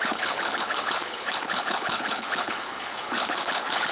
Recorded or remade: remade